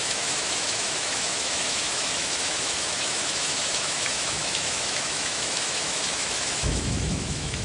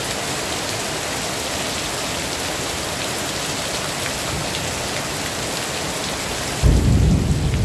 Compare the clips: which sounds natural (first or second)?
second